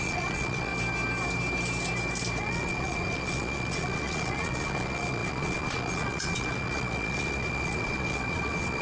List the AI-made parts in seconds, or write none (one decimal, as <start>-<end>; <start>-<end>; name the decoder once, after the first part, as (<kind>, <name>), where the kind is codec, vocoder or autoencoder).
0.0-0.7 (vocoder, Vocos); 2.4-8.8